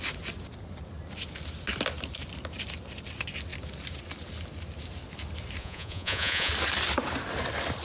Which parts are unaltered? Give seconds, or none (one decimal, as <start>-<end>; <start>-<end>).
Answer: 0.0-5.6; 6.5-7.8